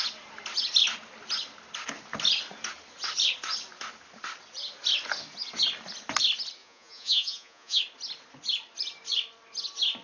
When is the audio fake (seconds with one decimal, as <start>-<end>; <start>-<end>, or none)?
6.6-7.8